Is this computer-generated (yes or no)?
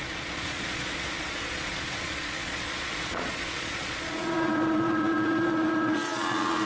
yes